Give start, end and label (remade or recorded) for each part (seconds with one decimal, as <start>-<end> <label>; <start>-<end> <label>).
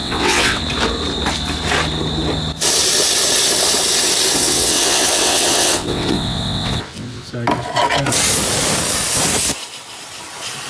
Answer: 0.0-0.6 remade; 0.6-4.4 recorded; 4.4-7.3 remade; 7.3-10.7 recorded